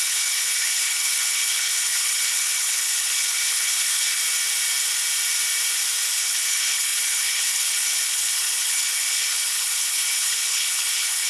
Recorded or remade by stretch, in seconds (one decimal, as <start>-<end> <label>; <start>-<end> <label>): 0.0-4.2 remade; 4.2-6.1 recorded; 6.1-11.3 remade